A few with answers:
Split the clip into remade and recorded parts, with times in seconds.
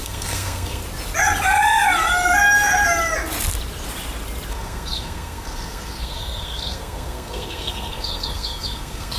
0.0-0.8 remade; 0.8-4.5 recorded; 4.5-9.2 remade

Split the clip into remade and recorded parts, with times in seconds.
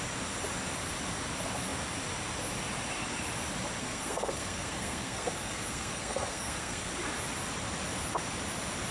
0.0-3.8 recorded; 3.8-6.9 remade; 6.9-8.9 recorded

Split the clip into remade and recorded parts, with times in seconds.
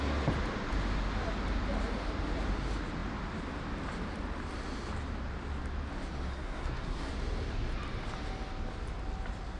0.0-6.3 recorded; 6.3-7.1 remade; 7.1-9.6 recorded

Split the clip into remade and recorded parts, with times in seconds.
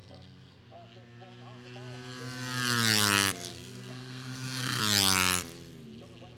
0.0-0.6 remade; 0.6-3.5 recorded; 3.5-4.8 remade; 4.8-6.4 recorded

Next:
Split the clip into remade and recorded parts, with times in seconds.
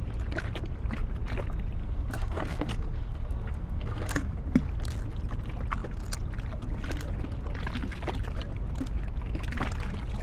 0.0-1.8 recorded; 1.8-4.4 remade; 4.4-10.2 recorded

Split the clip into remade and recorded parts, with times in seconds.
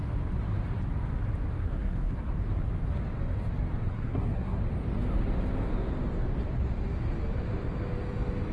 0.0-1.6 recorded; 1.6-2.3 remade; 2.3-3.9 recorded; 3.9-4.6 remade; 4.6-8.5 recorded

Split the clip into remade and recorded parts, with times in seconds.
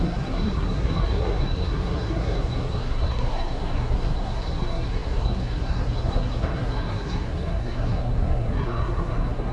0.0-9.5 remade